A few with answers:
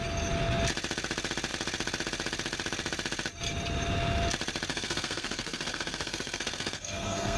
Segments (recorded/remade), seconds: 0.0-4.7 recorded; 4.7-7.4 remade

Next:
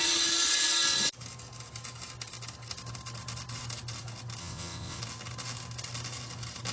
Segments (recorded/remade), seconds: 0.0-4.4 recorded; 4.4-5.0 remade; 5.0-6.7 recorded